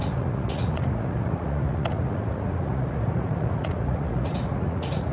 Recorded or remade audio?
remade